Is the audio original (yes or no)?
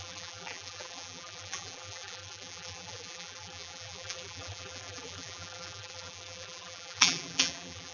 no